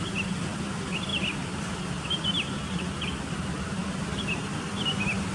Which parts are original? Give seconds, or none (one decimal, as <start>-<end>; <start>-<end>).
0.0-1.1; 3.4-3.8; 4.5-5.3